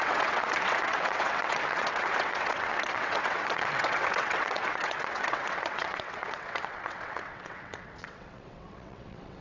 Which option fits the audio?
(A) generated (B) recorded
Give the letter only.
A